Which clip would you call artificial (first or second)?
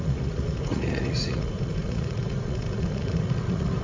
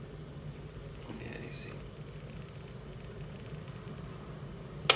first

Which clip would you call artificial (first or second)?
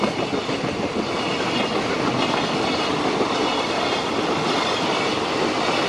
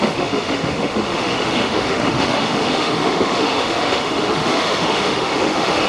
second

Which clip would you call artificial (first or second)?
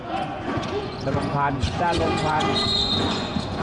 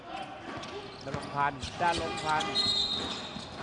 first